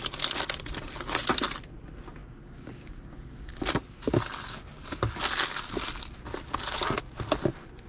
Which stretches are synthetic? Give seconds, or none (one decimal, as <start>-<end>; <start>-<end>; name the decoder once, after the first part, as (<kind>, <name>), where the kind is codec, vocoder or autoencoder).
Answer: 2.2-3.5 (codec, DAC)